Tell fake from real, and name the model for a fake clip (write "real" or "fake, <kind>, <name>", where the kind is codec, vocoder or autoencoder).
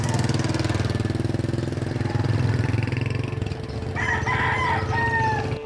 real